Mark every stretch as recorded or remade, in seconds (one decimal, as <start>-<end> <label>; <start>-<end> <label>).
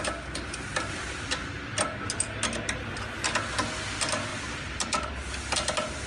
0.0-6.1 recorded